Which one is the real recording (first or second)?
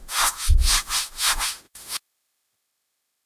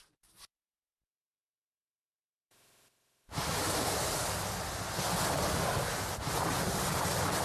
second